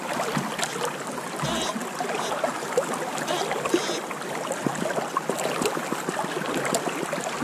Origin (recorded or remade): recorded